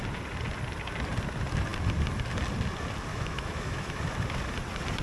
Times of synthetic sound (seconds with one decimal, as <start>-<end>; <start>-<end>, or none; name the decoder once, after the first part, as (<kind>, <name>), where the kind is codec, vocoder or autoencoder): 3.1-4.0 (autoencoder, DAC-VAE)